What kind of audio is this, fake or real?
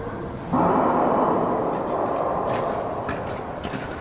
real